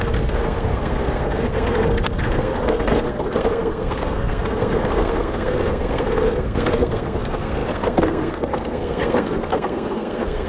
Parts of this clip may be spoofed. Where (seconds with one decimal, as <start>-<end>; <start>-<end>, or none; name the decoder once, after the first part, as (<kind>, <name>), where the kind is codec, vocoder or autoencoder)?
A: 0.0-10.5 (codec, SNAC)